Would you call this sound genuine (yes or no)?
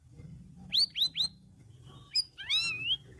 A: yes